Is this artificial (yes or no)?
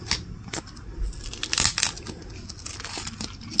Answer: no